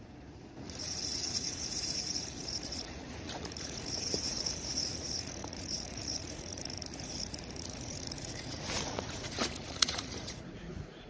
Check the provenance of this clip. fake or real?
fake